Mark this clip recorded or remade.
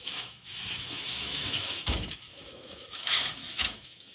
remade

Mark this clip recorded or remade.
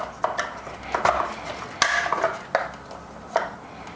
recorded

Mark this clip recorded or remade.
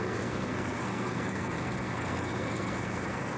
remade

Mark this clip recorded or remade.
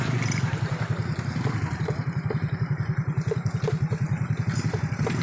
remade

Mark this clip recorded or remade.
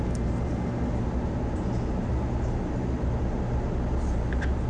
recorded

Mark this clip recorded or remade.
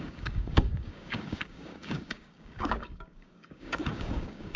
remade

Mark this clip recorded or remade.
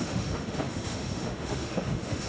remade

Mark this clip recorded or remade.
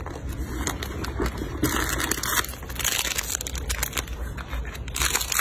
recorded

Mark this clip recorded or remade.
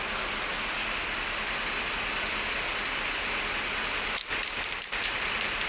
recorded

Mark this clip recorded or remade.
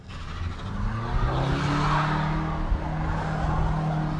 recorded